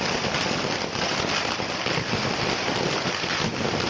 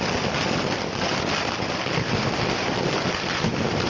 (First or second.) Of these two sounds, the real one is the second